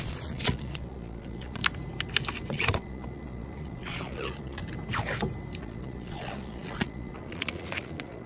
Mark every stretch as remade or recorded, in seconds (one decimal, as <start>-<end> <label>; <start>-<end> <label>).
0.0-1.6 remade; 1.6-2.5 recorded; 2.5-4.6 remade; 4.6-5.6 recorded; 5.6-8.3 remade